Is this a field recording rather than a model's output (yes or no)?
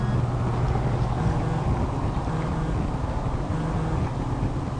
yes